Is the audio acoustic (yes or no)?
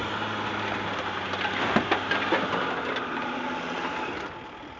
yes